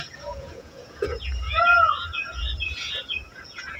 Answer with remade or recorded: remade